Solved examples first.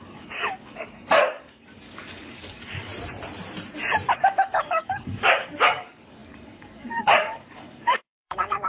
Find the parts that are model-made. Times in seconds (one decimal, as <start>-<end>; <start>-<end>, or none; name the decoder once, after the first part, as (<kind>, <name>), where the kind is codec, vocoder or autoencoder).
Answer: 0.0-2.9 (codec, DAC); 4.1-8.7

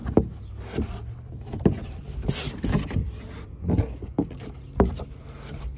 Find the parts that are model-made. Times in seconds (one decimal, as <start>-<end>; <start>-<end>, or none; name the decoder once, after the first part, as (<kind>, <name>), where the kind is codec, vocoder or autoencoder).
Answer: none

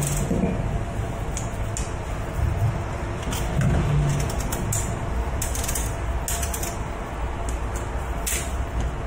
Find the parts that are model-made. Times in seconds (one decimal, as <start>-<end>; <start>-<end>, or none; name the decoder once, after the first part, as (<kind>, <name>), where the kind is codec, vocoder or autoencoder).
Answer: none

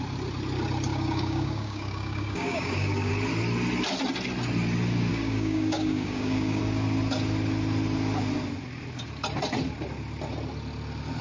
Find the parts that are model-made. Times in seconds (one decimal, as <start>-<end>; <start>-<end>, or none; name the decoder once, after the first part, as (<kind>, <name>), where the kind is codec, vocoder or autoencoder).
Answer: 0.9-3.1 (codec, DAC); 5.1-6.6